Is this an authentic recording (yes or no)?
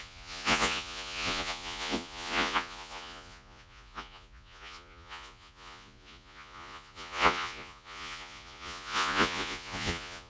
no